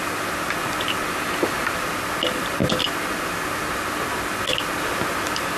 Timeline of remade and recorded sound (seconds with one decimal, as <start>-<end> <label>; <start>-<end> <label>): 0.0-5.6 recorded